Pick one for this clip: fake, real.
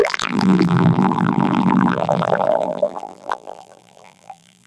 fake